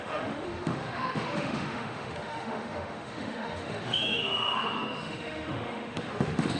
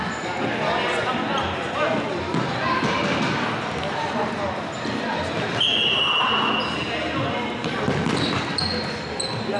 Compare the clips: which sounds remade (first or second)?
first